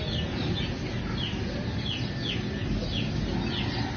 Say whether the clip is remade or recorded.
recorded